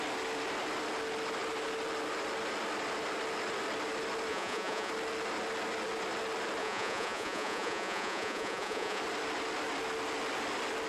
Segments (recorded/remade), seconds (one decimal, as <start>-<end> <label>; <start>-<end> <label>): 0.0-4.3 recorded; 4.3-4.9 remade; 4.9-6.6 recorded; 6.6-9.0 remade; 9.0-10.9 recorded

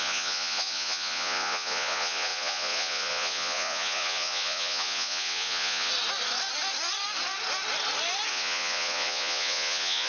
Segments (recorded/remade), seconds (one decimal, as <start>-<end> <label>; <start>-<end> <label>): 0.0-5.9 remade; 5.9-8.3 recorded; 8.3-10.1 remade